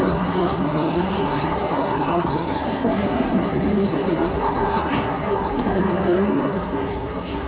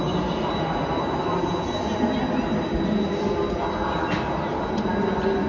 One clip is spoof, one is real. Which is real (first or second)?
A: second